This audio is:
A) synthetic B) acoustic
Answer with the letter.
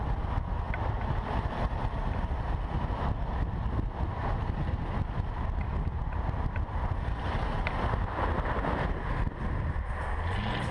B